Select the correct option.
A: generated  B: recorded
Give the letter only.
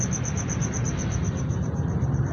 B